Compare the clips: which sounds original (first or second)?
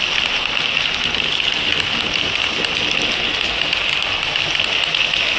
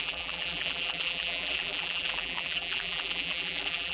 first